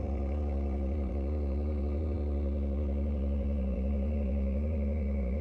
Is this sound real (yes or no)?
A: no